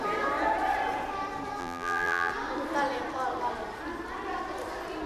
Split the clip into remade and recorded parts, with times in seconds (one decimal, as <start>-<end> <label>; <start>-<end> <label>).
0.0-1.6 recorded; 1.6-2.3 remade; 2.3-5.1 recorded